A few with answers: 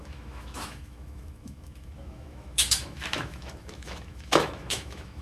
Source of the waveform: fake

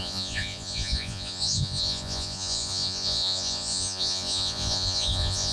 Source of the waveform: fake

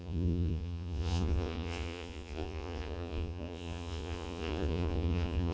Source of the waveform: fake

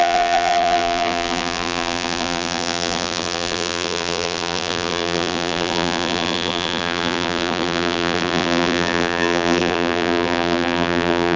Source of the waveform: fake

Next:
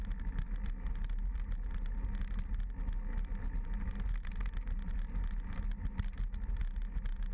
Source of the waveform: real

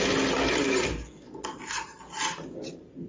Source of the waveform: real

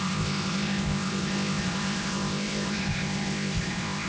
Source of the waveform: fake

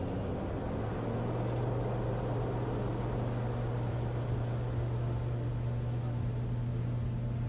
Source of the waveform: real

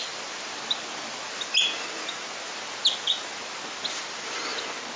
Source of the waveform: real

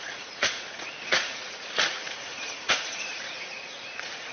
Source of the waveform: fake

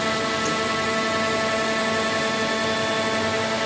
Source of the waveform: real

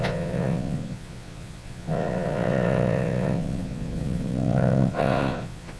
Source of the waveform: fake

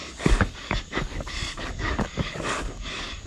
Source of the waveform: fake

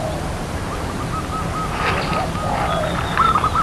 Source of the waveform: real